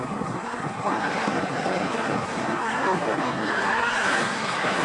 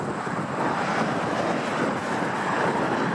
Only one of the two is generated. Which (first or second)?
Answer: first